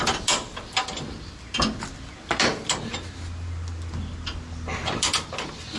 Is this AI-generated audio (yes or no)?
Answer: no